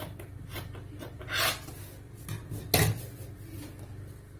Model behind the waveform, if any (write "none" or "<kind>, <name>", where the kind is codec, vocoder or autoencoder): none